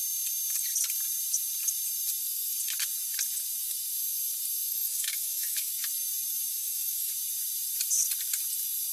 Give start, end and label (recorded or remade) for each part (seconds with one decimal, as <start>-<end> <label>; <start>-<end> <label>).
0.0-4.7 recorded; 4.7-5.7 remade; 5.7-6.5 recorded; 6.5-7.1 remade; 7.1-8.9 recorded